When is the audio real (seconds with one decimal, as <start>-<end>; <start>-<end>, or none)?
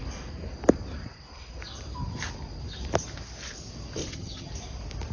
0.0-4.0; 4.5-5.1